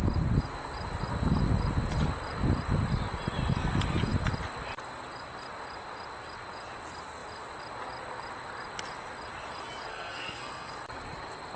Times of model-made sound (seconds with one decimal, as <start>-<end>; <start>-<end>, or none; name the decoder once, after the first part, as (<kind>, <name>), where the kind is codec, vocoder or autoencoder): 9.9-10.7 (codec, SNAC)